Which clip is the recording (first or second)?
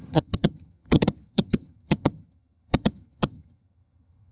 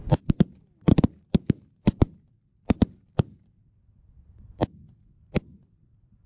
second